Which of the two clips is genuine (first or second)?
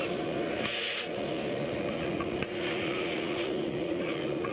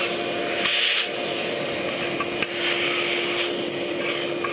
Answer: second